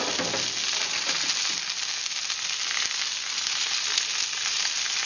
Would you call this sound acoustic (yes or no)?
yes